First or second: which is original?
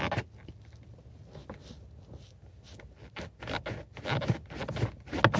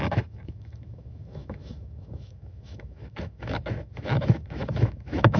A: first